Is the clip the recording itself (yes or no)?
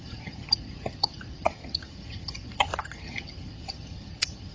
no